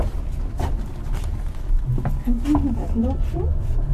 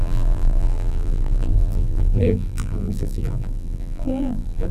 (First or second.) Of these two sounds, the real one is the first